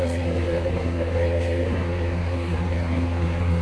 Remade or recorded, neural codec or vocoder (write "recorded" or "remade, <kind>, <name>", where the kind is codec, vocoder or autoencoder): remade, codec, SNAC